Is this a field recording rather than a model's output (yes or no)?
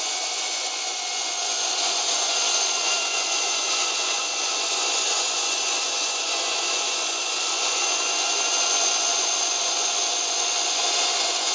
no